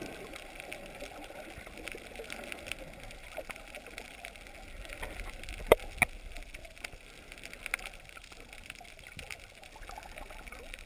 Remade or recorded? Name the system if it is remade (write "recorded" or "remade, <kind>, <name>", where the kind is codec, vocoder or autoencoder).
recorded